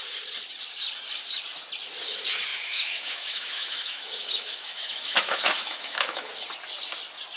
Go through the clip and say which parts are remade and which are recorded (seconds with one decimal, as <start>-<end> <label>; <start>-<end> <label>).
0.0-2.5 recorded; 2.5-6.3 remade; 6.3-7.4 recorded